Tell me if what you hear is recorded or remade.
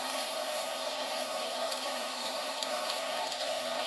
remade